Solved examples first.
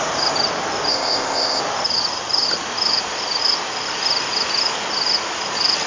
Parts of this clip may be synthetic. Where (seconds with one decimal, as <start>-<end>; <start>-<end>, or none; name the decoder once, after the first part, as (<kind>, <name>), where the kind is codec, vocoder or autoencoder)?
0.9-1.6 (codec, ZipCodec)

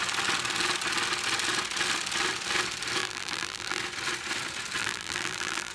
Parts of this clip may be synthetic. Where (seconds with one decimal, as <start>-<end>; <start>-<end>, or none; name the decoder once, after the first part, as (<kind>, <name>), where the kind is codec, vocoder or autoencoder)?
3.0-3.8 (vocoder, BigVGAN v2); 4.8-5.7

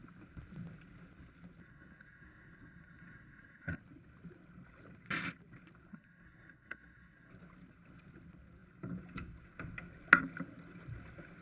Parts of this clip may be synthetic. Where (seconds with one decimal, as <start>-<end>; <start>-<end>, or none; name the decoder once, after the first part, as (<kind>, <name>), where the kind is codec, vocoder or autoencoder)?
1.6-3.8 (codec, SNAC); 5.9-7.3

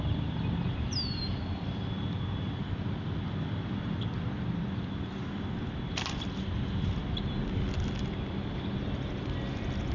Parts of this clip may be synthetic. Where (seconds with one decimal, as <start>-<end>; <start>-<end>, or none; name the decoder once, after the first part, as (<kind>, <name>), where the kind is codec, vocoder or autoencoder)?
none